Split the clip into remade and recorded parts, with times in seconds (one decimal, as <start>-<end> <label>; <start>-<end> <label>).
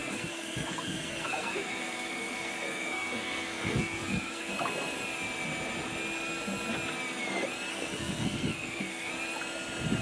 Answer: 0.0-4.5 remade; 4.5-7.7 recorded; 7.7-9.1 remade; 9.1-10.0 recorded